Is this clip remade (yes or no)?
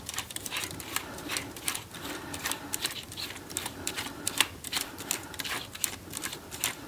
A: no